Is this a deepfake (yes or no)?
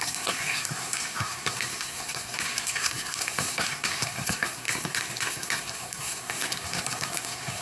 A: yes